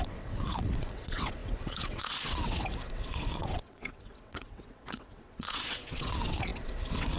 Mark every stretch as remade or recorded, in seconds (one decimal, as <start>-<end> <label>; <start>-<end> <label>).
0.0-7.2 remade